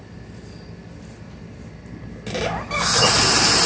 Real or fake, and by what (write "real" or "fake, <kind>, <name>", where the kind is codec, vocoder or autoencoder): real